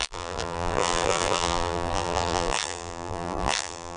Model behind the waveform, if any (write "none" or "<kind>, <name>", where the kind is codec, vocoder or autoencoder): vocoder, BigVGAN v2